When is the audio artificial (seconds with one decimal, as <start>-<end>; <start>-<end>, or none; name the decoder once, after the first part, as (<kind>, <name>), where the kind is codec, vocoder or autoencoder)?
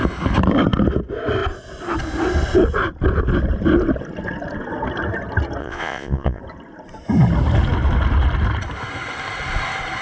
5.6-6.4 (vocoder, Vocos)